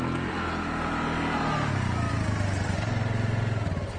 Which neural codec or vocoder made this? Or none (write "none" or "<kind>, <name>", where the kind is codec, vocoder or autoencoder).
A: none